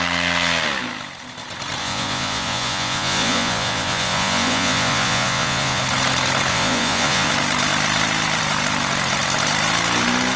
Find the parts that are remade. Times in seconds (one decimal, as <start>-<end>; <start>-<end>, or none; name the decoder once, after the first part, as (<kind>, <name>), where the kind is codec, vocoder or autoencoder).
1.8-5.8 (vocoder, Vocos); 6.5-7.3